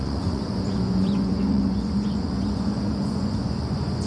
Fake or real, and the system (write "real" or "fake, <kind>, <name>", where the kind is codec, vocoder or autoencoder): fake, vocoder, Vocos